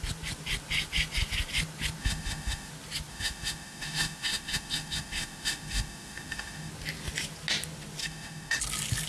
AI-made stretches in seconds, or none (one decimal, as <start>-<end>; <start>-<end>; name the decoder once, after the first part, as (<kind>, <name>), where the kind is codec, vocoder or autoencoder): 2.0-2.7 (autoencoder, DAC-VAE); 3.1-6.7; 8.0-8.6